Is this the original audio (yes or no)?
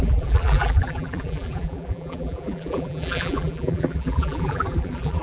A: no